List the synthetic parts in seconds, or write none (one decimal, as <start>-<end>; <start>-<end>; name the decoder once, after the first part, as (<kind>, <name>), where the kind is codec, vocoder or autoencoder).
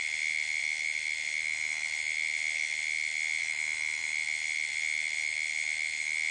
none